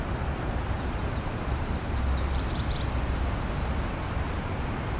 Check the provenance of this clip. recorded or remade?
remade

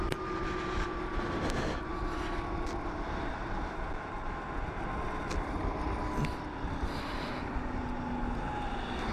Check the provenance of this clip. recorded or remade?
recorded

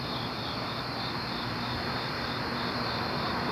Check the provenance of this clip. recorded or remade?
recorded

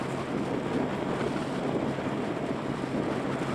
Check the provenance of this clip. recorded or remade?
recorded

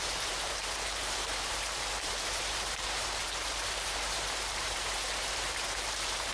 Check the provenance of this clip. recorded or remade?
remade